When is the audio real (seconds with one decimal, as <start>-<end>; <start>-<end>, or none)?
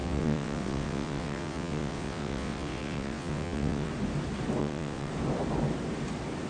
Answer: 3.9-4.6; 5.1-6.5